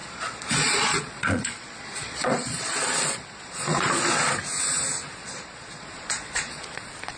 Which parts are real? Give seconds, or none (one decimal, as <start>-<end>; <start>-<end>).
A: 4.3-5.2; 6.8-7.2